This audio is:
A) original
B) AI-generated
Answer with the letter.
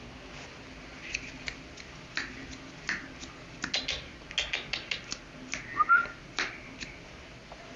A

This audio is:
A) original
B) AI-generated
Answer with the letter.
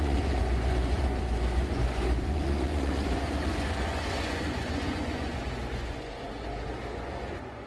B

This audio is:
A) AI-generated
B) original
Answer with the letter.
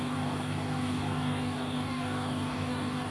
A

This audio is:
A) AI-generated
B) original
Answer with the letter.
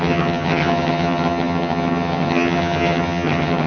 A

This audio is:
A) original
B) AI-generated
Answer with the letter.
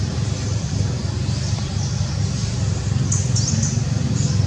B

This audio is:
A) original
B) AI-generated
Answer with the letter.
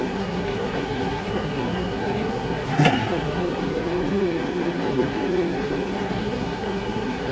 B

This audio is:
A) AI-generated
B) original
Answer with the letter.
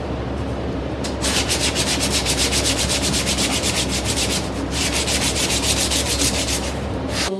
A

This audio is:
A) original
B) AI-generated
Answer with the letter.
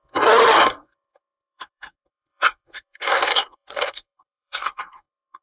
B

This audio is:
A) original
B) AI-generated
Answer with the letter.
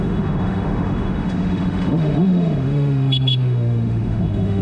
B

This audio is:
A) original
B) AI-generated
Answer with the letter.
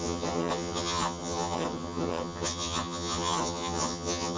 B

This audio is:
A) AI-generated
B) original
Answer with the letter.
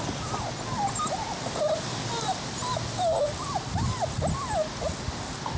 B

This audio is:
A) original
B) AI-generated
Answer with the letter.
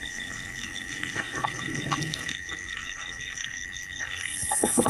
B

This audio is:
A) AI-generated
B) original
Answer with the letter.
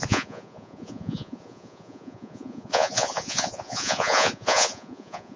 A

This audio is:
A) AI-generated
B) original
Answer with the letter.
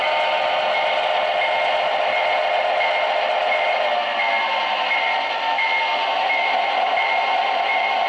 B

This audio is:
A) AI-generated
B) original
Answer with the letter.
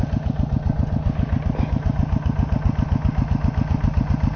B